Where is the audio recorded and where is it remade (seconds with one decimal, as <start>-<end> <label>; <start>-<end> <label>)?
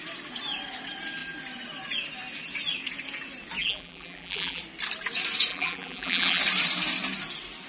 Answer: 0.0-3.6 recorded; 3.6-4.6 remade; 4.6-5.5 recorded; 5.5-6.4 remade; 6.4-7.7 recorded